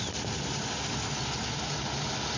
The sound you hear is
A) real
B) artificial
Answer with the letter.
A